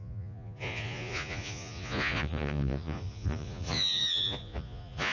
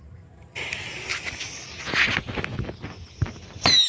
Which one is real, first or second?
second